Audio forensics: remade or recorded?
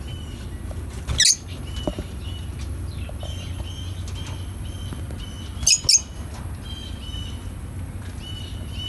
recorded